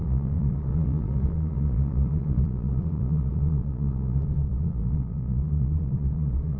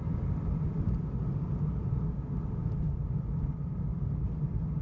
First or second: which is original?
second